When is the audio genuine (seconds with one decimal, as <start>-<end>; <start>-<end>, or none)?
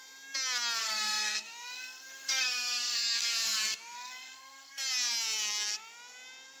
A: 0.0-0.8; 4.8-6.6